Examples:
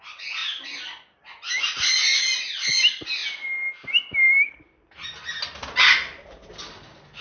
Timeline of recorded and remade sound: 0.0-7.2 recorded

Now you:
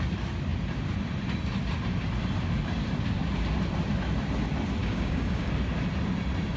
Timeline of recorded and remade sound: 0.0-4.8 recorded; 4.8-5.5 remade; 5.5-6.6 recorded

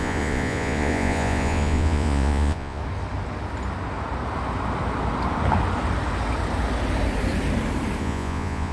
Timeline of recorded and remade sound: 0.0-2.8 remade; 2.8-8.0 recorded; 8.0-8.7 remade

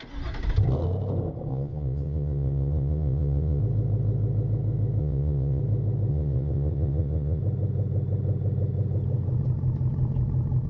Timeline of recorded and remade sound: 0.0-1.5 recorded; 1.5-3.6 remade; 3.6-5.0 recorded; 5.0-5.6 remade; 5.6-6.1 recorded; 6.1-7.4 remade; 7.4-10.7 recorded

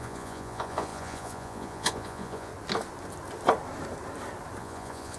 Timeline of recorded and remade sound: 0.0-2.5 remade; 2.5-4.6 recorded; 4.6-5.2 remade